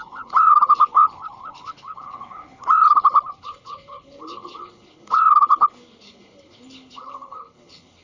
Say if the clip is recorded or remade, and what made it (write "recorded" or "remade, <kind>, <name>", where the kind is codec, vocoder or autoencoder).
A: remade, codec, HILCodec